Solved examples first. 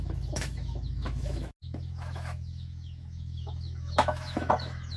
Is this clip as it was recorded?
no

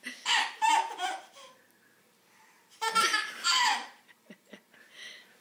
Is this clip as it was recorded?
no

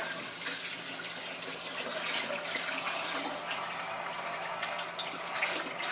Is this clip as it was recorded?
yes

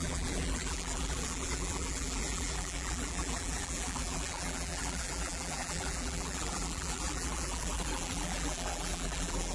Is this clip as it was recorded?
no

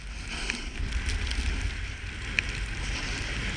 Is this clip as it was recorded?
yes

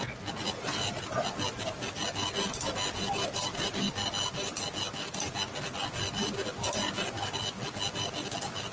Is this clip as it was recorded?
yes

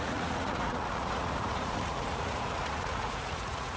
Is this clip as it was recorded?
no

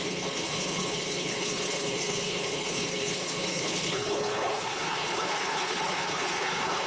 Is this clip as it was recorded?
no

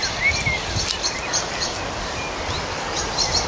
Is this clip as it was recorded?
yes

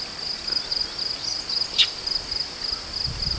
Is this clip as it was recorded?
yes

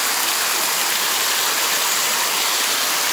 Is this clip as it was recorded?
yes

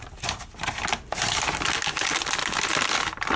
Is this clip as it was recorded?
no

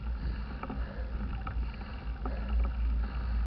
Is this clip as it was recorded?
yes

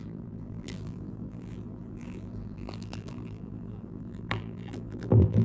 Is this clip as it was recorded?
no